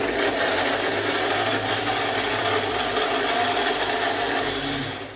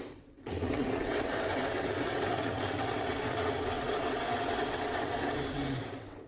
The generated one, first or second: second